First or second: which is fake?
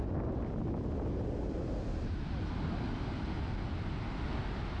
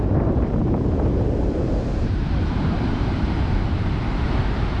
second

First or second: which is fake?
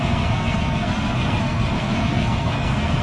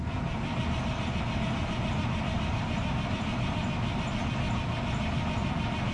first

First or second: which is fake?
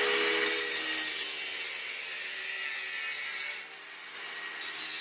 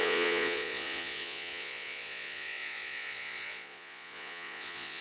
second